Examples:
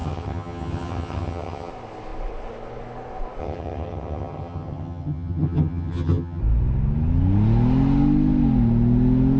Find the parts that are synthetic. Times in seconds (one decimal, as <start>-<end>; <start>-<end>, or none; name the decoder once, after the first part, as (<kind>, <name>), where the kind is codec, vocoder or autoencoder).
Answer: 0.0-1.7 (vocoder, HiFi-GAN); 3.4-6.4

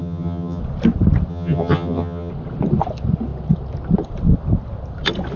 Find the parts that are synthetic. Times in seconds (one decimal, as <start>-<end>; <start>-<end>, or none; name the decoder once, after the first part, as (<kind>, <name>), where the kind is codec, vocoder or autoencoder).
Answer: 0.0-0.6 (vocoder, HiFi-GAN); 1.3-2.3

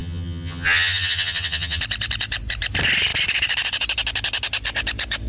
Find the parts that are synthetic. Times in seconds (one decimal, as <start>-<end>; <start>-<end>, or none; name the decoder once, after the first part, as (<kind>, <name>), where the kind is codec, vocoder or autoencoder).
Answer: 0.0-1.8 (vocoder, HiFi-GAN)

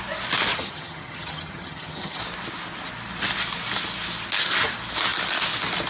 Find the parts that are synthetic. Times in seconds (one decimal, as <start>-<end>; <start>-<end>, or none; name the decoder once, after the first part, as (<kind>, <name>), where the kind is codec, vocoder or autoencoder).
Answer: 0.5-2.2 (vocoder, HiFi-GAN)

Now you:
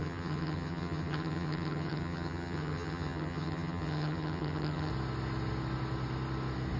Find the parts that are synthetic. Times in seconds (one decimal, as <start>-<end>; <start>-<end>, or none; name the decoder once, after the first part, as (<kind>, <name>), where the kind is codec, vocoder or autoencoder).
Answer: 0.0-4.9 (vocoder, HiFi-GAN)